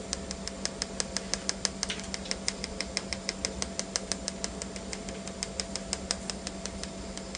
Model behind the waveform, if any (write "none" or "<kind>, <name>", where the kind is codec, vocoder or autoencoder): none